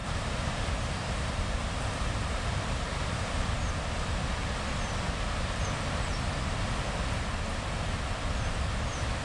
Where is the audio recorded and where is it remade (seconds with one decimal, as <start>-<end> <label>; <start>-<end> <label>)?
0.0-3.7 remade; 3.7-9.2 recorded